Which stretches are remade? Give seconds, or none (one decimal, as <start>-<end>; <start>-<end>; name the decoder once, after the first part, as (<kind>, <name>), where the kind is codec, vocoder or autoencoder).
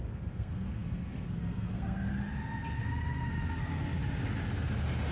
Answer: 0.0-2.1 (codec, SNAC); 3.3-4.0